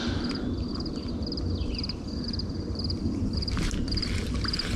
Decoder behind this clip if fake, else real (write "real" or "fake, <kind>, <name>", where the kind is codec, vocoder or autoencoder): real